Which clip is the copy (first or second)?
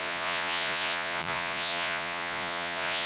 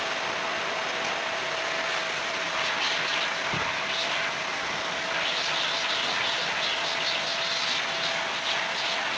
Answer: first